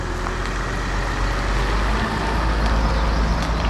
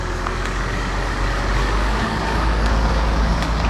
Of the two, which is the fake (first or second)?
second